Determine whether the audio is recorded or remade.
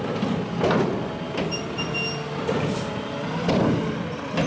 recorded